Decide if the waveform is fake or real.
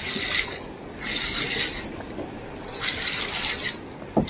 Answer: real